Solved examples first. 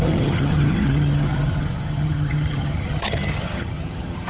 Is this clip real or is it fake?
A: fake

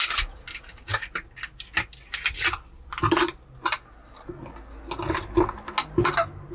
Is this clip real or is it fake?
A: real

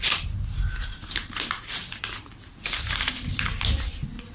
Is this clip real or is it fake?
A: real